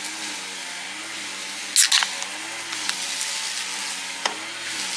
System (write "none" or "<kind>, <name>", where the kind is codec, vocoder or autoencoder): none